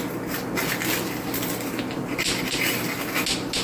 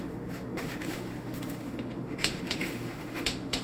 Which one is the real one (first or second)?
first